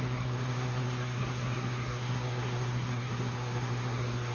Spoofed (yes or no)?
yes